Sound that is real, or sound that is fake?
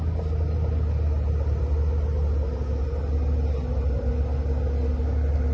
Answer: real